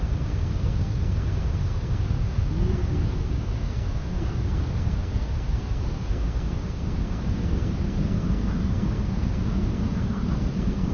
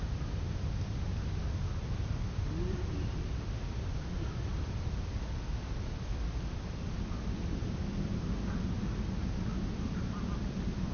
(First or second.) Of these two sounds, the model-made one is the first